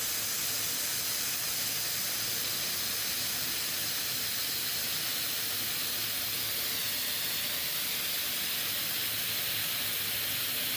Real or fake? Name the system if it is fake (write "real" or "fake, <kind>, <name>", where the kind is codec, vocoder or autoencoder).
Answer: real